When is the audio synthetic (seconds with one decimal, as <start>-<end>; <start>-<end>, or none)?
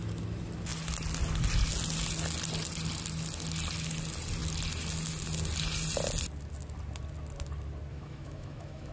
7.9-8.9